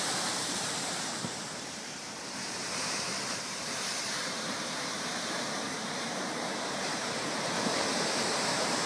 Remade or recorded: remade